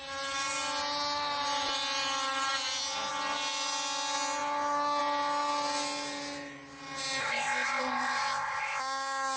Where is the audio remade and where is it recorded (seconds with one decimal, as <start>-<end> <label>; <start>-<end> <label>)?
0.0-7.2 recorded; 7.2-8.8 remade; 8.8-9.4 recorded